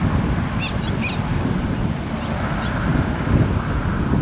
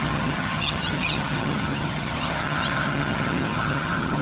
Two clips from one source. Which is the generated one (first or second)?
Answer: second